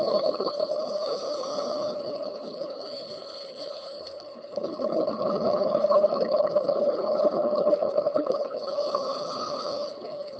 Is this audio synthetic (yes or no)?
yes